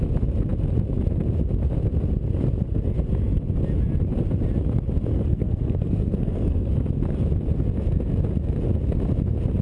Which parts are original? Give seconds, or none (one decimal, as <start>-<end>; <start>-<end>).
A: 0.0-5.1; 6.7-9.6